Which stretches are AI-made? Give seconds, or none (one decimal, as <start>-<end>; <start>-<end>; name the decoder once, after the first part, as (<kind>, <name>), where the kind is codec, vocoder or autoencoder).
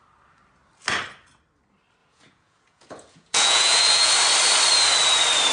2.0-4.1 (vocoder, Vocos)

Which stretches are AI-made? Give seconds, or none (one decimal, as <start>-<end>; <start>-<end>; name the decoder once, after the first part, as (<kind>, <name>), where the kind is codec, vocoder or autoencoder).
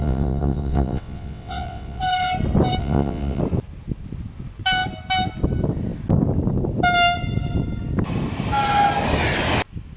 0.0-2.0 (vocoder, WaveNeXt); 2.8-3.4